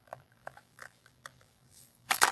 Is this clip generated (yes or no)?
yes